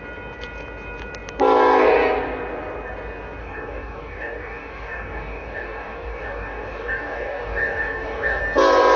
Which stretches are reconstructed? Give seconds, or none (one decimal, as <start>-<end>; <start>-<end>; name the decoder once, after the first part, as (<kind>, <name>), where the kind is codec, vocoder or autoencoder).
3.4-8.4 (codec, DAC)